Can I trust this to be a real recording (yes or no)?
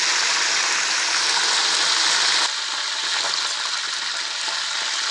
yes